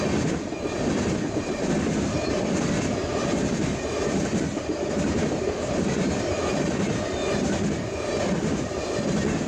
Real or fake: fake